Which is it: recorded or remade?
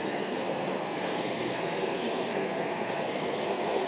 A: remade